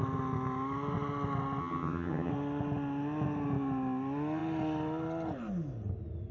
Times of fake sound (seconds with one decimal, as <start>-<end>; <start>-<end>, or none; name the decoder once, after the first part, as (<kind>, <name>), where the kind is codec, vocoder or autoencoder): 1.6-2.3 (vocoder, HiFi-GAN)